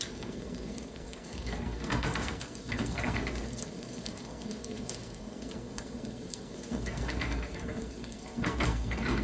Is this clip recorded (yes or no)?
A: no